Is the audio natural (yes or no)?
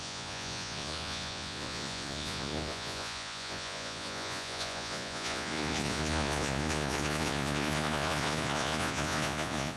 no